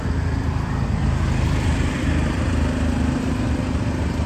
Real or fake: fake